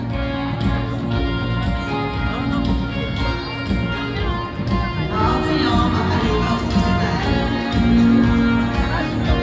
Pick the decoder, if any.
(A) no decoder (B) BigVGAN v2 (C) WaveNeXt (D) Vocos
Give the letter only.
A